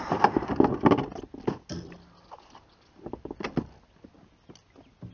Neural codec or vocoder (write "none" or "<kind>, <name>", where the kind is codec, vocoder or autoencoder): none